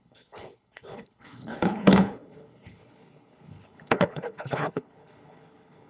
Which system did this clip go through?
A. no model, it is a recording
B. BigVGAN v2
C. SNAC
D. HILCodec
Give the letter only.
D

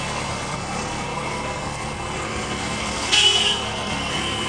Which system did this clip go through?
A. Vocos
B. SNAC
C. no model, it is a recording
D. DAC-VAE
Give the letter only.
B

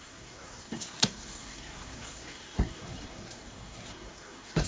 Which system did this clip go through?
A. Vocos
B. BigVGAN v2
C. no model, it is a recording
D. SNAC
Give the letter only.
D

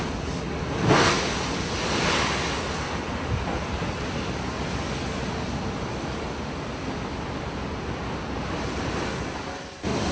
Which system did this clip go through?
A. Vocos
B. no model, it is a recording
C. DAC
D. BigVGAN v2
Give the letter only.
B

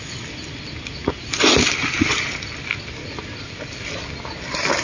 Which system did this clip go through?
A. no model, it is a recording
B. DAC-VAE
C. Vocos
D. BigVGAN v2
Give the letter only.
A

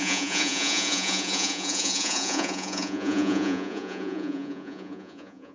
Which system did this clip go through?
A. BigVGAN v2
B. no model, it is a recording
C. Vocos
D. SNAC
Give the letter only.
C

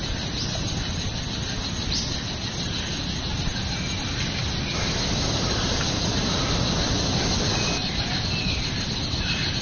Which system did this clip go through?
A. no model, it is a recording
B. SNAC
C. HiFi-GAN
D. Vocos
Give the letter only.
A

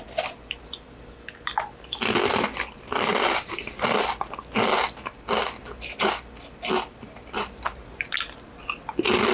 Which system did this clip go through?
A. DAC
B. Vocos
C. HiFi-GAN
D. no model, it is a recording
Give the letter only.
D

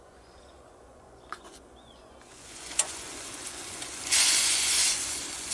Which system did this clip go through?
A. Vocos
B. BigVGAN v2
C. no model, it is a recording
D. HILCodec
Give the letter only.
A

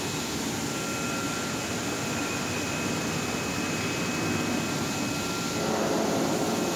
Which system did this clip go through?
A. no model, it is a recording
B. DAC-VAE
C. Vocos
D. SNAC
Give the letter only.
A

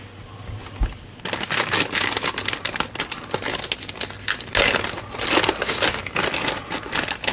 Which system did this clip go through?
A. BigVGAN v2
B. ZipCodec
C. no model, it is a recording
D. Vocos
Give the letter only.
C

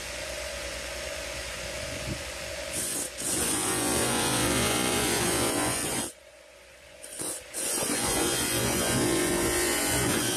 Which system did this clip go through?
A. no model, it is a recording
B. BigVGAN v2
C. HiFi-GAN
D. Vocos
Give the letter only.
D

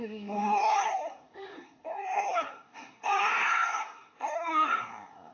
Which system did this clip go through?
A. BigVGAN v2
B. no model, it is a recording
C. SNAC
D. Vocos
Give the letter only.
C